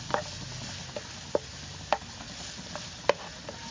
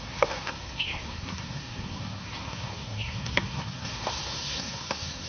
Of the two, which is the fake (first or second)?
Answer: second